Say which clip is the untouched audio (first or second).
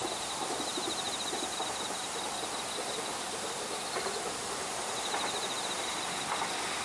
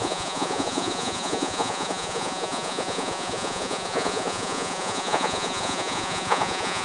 first